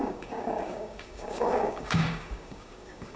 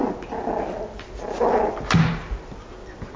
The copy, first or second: first